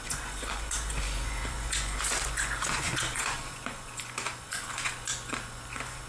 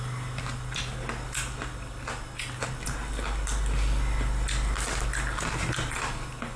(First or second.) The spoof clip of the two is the first